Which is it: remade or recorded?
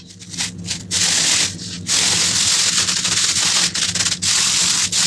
recorded